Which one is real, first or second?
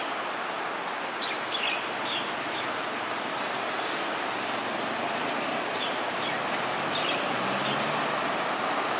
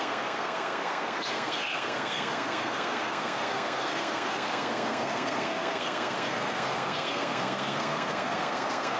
first